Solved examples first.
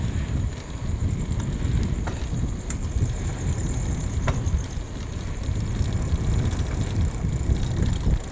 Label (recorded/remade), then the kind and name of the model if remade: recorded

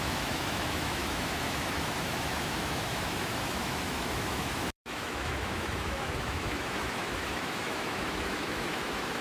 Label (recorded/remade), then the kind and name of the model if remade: remade, autoencoder, DAC-VAE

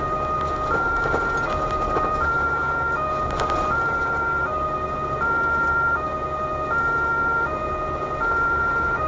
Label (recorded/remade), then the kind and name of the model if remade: recorded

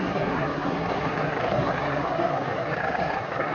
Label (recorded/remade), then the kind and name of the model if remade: remade, codec, SNAC